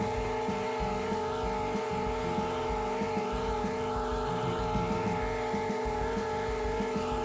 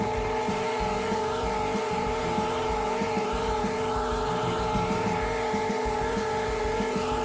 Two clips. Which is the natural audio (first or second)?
first